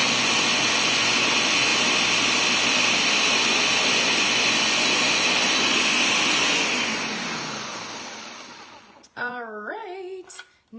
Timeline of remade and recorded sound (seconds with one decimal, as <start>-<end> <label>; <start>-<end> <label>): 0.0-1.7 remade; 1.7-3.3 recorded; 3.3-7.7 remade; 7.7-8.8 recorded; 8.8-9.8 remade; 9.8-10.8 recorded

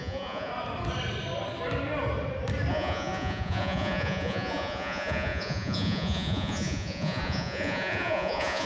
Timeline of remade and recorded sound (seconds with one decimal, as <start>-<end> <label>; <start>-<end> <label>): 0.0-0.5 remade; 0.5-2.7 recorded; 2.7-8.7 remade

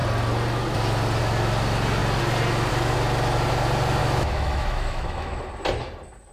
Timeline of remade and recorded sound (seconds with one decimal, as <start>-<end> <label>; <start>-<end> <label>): 0.0-4.0 recorded; 4.0-5.4 remade; 5.4-6.3 recorded

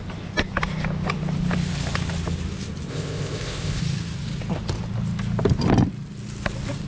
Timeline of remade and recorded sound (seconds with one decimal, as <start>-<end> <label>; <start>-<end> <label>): 0.0-2.9 recorded; 2.9-3.8 remade; 3.8-6.9 recorded

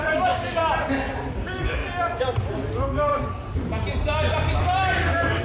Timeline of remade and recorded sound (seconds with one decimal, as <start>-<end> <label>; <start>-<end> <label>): 0.0-0.6 remade; 0.6-1.3 recorded; 1.3-1.8 remade; 1.8-2.7 recorded; 2.7-3.1 remade; 3.1-4.6 recorded; 4.6-5.4 remade